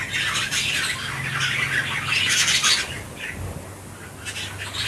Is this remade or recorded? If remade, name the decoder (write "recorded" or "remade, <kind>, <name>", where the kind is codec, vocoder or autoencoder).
recorded